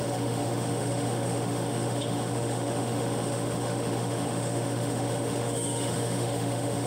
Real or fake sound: fake